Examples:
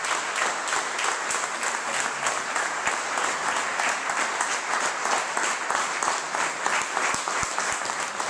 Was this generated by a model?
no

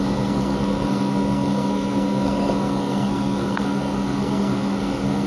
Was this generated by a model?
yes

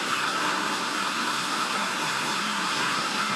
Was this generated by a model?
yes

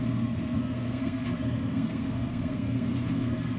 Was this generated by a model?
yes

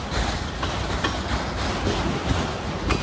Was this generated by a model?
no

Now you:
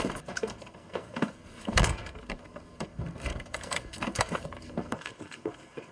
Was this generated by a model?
yes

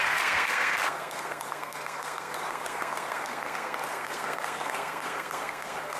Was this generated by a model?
yes